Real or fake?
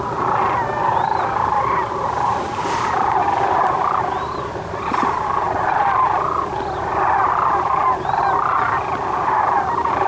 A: real